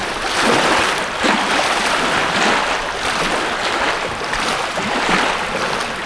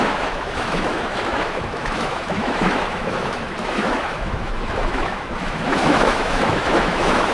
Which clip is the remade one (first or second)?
second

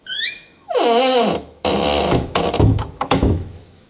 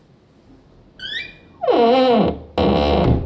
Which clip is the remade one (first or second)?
first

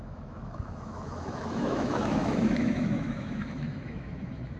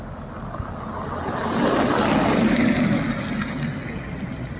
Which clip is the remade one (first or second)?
first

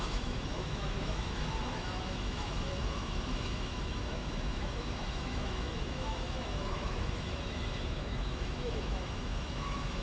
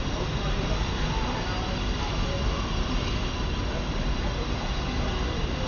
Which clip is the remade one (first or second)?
first